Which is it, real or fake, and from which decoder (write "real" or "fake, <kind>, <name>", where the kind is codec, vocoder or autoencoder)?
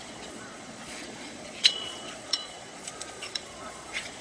fake, vocoder, Vocos